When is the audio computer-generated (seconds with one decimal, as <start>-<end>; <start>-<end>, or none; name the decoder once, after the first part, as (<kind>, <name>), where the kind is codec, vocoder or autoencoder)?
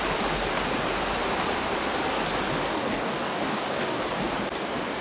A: 2.7-4.0 (codec, DAC)